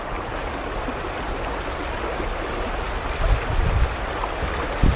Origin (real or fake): real